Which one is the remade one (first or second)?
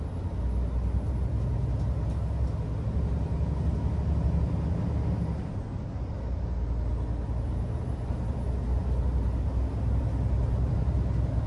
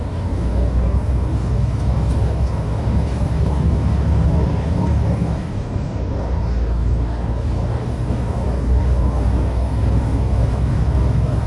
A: second